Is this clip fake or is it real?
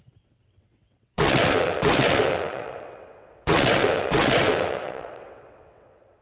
fake